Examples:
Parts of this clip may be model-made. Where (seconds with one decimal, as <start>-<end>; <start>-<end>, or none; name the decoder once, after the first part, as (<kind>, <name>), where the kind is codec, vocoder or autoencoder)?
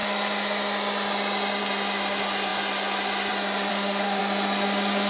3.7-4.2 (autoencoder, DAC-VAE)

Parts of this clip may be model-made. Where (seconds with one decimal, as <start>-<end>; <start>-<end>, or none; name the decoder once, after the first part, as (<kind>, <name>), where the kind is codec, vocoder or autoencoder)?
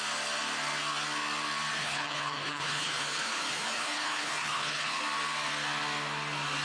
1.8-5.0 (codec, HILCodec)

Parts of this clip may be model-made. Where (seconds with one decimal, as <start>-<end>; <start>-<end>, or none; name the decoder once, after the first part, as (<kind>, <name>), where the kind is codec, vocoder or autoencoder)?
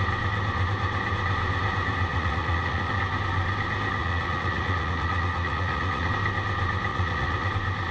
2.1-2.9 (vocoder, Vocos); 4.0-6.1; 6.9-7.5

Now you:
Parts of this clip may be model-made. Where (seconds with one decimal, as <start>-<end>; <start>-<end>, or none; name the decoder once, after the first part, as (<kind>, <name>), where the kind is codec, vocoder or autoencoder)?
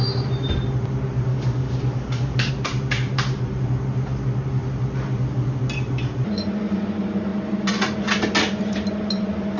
1.3-2.5 (codec, DAC)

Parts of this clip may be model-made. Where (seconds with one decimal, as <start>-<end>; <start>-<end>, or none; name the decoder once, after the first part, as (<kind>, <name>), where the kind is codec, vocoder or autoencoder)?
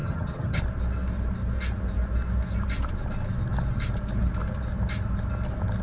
0.0-0.6 (vocoder, HiFi-GAN)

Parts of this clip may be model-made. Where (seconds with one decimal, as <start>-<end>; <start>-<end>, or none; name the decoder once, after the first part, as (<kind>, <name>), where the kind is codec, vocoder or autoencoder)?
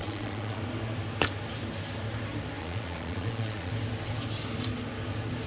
0.0-0.6 (vocoder, Vocos); 2.6-3.7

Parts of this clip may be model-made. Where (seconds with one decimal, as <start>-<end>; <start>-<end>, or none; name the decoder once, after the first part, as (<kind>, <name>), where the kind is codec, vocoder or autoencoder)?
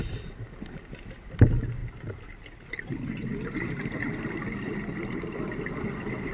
1.8-2.8 (vocoder, BigVGAN v2)